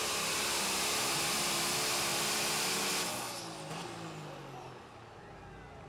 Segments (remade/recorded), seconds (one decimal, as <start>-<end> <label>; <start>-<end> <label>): 0.0-2.1 recorded; 2.1-2.8 remade; 2.8-5.9 recorded